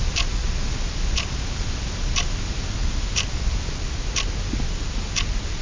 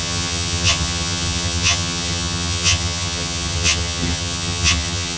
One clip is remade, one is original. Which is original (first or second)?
first